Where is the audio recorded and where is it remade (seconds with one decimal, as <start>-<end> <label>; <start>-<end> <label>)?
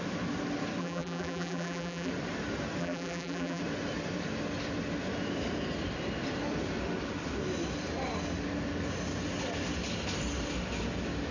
0.0-0.8 recorded; 0.8-2.1 remade; 2.1-2.8 recorded; 2.8-3.6 remade; 3.6-11.3 recorded